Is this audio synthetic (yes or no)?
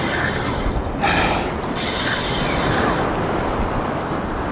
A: no